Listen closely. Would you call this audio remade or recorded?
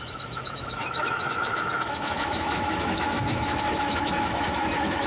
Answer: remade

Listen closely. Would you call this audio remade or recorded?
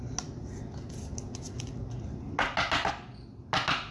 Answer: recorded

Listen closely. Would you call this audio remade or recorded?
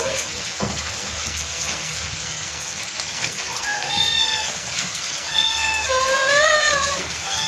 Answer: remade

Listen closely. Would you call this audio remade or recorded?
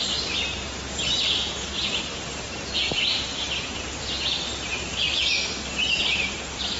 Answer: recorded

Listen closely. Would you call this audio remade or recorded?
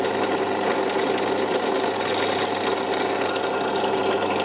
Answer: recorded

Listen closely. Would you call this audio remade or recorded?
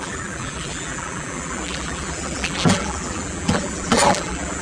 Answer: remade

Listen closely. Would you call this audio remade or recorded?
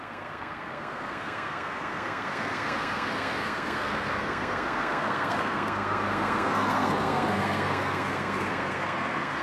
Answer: remade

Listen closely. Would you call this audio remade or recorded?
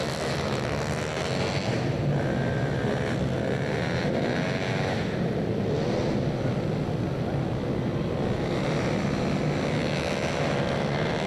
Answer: recorded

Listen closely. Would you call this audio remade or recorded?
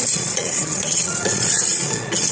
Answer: remade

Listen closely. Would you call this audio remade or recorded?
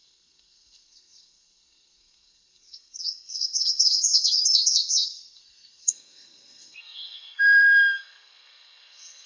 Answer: remade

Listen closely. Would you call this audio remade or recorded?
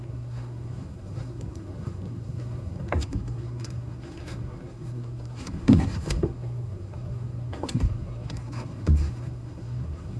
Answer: remade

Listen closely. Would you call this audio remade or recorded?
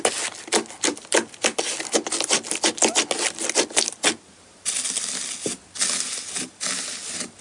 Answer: recorded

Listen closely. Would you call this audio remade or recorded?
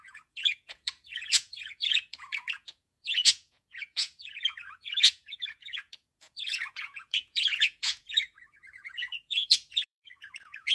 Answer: remade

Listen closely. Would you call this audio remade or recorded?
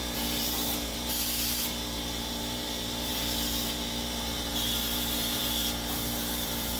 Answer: remade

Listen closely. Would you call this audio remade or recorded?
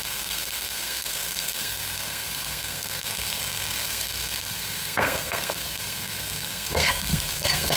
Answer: remade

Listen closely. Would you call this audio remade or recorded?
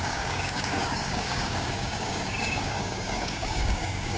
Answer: remade